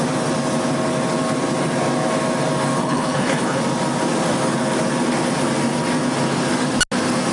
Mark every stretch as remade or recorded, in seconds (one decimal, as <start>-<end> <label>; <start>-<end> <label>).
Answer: 0.0-2.8 recorded; 2.8-3.6 remade; 3.6-7.3 recorded